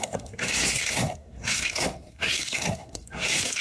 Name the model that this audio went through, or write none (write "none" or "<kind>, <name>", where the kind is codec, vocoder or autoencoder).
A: codec, SNAC